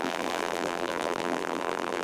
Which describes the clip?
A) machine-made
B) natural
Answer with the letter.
A